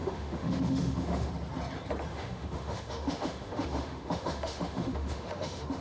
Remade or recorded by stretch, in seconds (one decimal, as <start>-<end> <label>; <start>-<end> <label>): 0.0-1.3 remade; 1.3-2.1 recorded; 2.1-5.8 remade